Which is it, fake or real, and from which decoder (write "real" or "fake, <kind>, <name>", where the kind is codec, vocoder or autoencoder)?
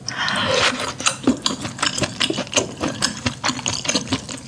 real